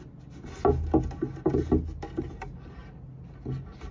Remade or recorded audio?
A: recorded